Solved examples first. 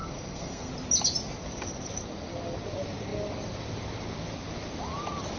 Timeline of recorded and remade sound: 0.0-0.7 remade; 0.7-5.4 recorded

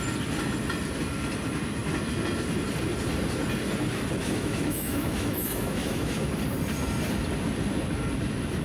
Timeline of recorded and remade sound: 0.0-4.2 recorded; 4.2-6.3 remade; 6.3-8.6 recorded

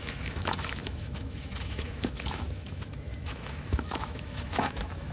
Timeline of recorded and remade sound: 0.0-5.1 remade

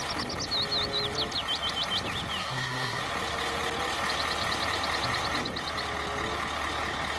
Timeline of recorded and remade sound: 0.0-2.4 recorded; 2.4-3.0 remade; 3.0-7.2 recorded

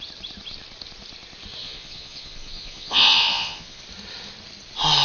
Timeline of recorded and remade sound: 0.0-1.6 recorded; 1.6-3.8 remade; 3.8-5.0 recorded

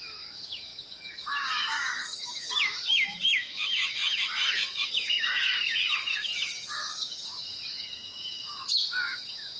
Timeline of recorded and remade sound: 0.0-9.6 remade

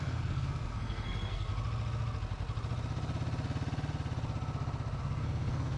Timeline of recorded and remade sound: 0.0-1.5 remade; 1.5-5.0 recorded; 5.0-5.8 remade

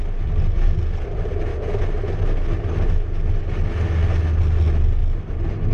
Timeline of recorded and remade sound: 0.0-5.7 recorded